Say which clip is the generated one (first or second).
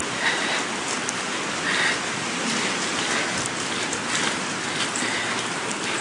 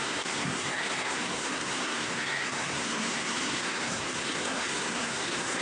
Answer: second